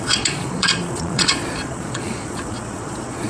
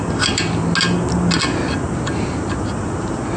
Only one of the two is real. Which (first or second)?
second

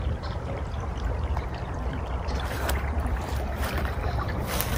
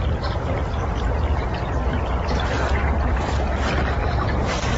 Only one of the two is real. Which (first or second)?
second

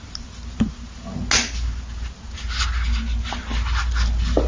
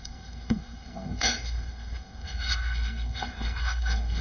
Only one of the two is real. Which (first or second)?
first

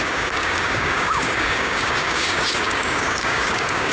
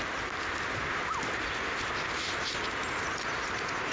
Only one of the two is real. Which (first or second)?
second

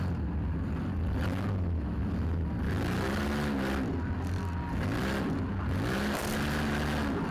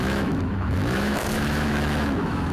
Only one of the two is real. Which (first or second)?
first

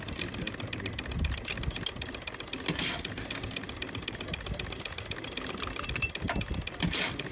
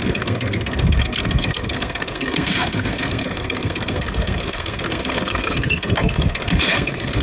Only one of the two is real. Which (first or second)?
first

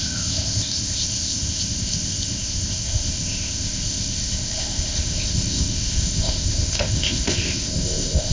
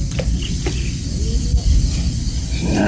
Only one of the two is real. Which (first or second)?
second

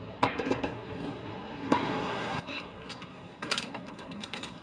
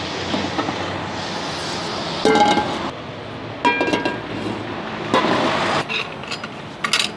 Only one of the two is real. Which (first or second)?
second